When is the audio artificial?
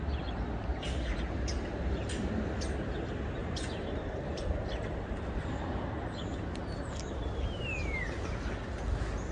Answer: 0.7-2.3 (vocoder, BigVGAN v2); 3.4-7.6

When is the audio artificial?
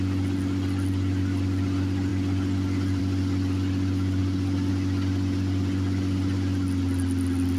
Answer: none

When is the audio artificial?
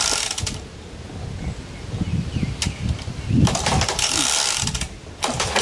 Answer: 2.1-4.6 (vocoder, BigVGAN v2)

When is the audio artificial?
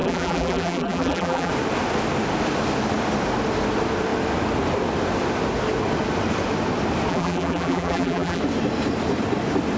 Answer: 0.0-1.5 (vocoder, BigVGAN v2); 7.1-8.4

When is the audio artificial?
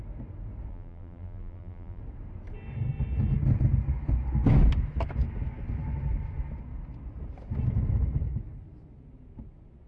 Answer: 0.7-2.0 (vocoder, BigVGAN v2)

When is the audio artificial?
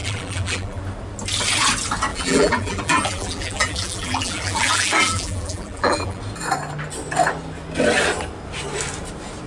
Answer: 0.0-0.8 (vocoder, BigVGAN v2); 2.1-6.2